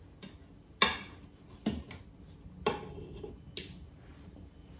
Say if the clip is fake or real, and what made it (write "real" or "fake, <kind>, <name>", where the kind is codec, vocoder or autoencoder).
real